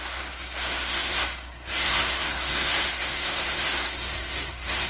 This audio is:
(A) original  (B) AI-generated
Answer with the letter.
B